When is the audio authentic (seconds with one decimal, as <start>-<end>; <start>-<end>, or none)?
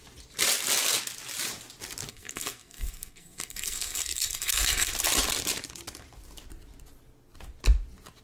0.0-2.1; 4.9-8.2